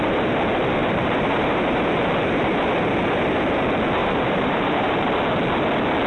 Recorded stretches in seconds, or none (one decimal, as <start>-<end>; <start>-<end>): 0.0-0.8; 2.0-4.0; 5.2-6.1